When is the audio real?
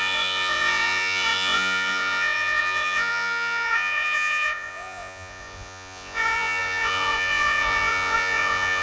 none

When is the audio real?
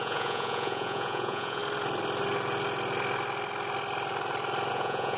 1.6-4.7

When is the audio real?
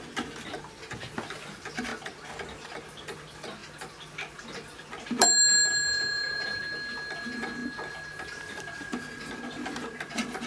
0.0-10.5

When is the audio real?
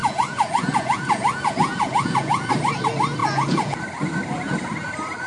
2.5-3.2; 3.8-5.3